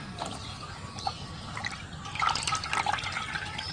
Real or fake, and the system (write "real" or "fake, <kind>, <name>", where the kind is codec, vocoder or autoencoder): real